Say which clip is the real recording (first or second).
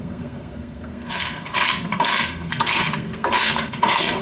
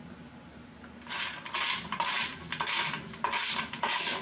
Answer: second